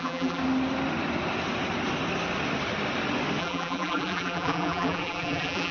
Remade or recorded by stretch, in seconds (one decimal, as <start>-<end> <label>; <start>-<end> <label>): 0.0-0.4 remade; 0.4-3.4 recorded; 3.4-5.7 remade